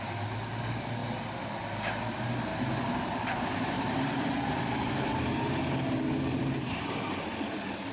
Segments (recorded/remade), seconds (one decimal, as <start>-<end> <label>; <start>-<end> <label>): 0.0-2.5 recorded; 2.5-7.2 remade; 7.2-7.9 recorded